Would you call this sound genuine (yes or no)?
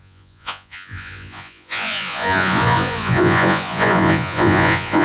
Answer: no